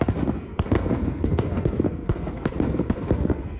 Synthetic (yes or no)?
yes